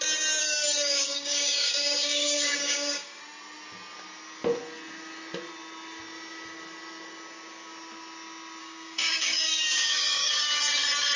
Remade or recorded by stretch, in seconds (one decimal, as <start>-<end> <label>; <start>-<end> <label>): 0.0-0.4 recorded; 0.4-3.2 remade; 3.2-8.6 recorded; 8.6-10.6 remade; 10.6-11.2 recorded